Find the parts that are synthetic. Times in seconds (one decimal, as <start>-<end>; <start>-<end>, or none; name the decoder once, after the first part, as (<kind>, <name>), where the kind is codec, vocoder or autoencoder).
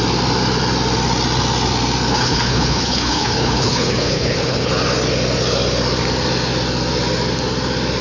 2.1-4.7 (codec, HILCodec)